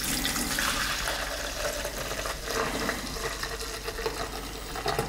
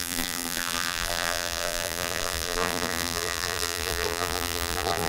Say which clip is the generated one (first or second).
second